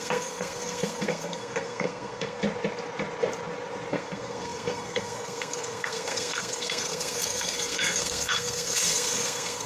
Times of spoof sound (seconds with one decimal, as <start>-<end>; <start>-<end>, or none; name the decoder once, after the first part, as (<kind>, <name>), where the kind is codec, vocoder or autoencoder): 0.0-2.4 (codec, SNAC); 3.9-9.7